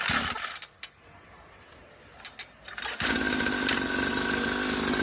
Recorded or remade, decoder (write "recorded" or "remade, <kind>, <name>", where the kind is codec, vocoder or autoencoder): recorded